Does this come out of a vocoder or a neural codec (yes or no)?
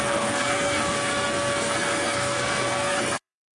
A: yes